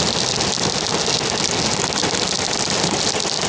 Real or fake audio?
real